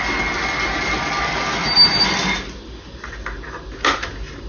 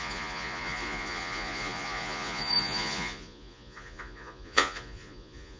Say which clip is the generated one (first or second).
second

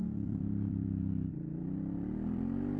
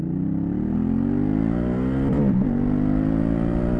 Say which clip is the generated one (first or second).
first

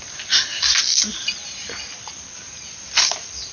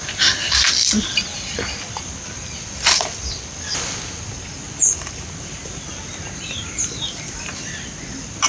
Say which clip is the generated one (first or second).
second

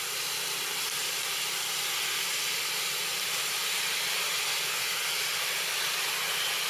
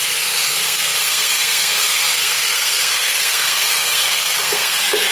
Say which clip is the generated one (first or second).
second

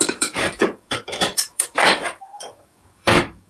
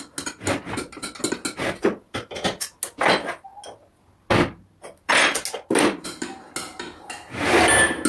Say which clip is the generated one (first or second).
first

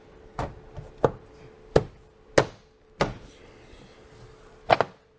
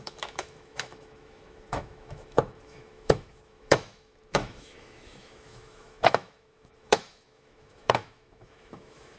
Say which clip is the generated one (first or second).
second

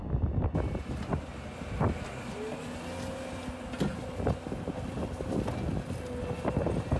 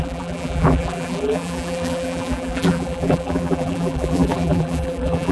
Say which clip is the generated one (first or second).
second